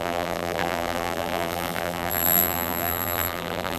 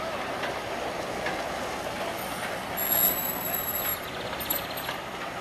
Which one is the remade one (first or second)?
first